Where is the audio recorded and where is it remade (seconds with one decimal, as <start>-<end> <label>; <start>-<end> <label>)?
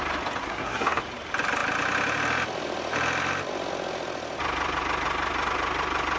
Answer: 0.0-0.4 recorded; 0.4-1.0 remade; 1.0-6.2 recorded